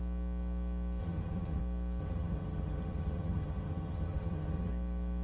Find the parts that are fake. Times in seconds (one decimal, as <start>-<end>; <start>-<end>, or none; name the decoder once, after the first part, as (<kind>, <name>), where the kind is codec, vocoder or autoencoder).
1.0-1.6 (vocoder, HiFi-GAN); 2.0-4.7